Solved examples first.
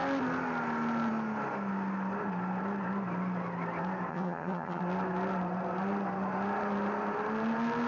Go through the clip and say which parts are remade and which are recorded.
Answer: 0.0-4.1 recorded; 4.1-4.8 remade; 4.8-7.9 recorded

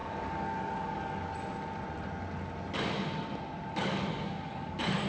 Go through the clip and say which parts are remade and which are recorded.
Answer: 0.0-1.3 remade; 1.3-3.7 recorded; 3.7-5.1 remade